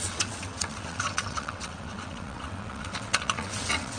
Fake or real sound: fake